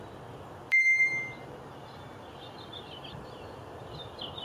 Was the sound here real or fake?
real